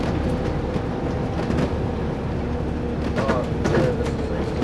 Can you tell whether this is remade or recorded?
recorded